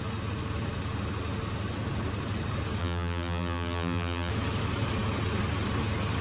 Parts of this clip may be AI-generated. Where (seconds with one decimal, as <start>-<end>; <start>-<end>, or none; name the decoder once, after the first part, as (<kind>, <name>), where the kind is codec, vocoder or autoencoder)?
2.8-4.3 (vocoder, BigVGAN v2)